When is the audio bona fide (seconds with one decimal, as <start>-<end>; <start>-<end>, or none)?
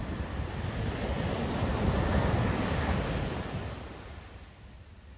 0.0-5.2